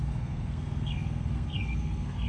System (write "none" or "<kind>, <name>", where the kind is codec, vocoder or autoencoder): codec, SNAC